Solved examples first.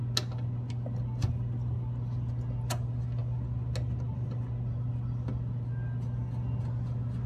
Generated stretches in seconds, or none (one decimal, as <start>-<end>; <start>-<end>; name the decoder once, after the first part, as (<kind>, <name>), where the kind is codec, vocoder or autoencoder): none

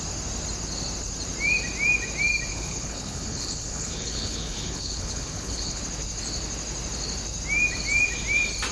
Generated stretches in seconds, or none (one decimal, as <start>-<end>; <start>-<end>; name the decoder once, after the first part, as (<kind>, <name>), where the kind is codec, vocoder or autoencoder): 2.5-5.8 (codec, HILCodec)

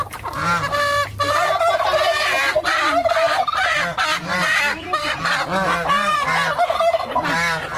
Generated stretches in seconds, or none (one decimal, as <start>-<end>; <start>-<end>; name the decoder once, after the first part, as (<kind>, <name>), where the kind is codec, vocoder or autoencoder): none